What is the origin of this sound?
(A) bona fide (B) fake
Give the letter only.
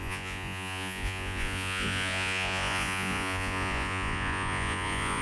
B